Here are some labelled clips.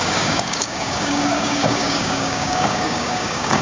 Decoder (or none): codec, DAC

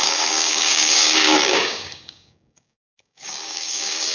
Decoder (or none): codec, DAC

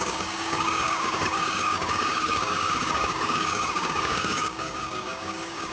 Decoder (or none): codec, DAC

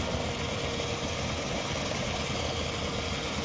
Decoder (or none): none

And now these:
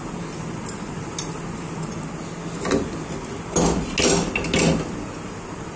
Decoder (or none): none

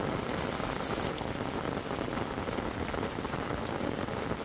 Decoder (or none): none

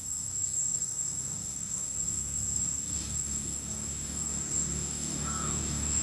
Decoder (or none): codec, DAC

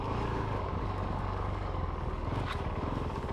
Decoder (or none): codec, DAC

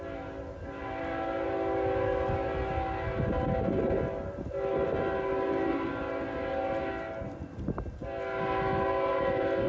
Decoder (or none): none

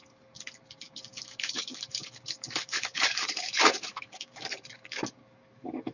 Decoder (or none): codec, DAC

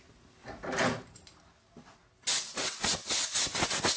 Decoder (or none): none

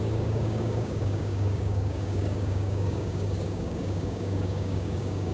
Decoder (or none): codec, DAC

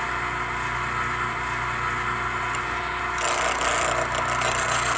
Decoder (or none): none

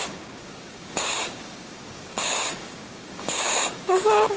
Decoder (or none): codec, DAC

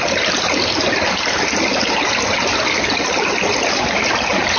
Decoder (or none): none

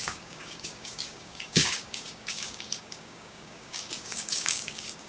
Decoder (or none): codec, DAC